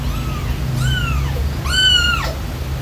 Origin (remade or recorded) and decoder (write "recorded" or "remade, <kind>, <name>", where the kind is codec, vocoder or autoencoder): recorded